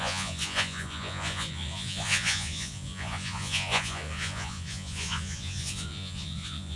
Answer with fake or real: fake